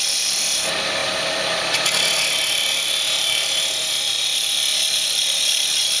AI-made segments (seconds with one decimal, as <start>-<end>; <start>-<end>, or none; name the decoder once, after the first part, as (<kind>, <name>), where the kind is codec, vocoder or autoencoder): none